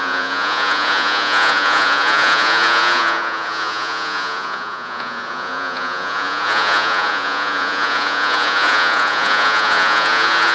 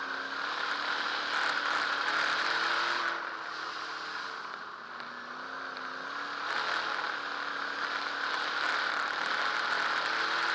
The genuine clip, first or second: second